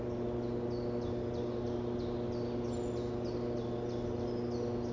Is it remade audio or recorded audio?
recorded